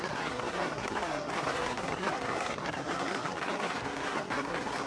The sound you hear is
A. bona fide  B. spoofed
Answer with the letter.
B